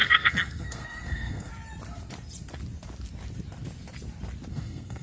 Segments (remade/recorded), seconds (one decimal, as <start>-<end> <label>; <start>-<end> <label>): 0.0-1.5 remade; 1.5-4.5 recorded; 4.5-5.0 remade